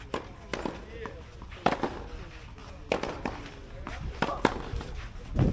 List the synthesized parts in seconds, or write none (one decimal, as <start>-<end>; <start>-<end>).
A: none